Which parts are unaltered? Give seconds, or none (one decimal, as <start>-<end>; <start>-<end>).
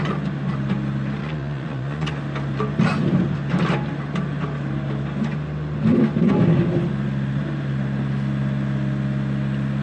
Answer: 0.0-1.2; 2.1-9.8